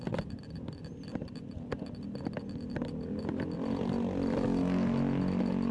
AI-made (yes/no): no